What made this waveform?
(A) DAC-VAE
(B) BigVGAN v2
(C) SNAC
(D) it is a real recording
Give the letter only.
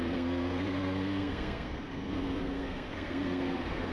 C